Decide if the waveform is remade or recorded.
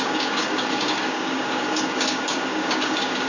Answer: remade